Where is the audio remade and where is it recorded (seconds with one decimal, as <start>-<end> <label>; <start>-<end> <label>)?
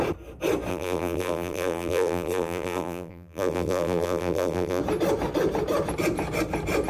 0.0-0.7 recorded; 0.7-4.8 remade; 4.8-6.9 recorded